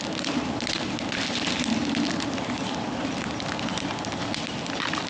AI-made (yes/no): no